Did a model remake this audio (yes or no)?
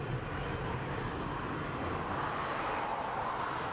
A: no